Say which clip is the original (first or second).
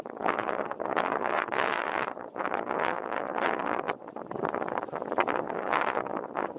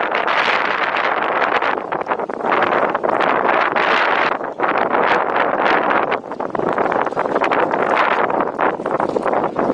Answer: second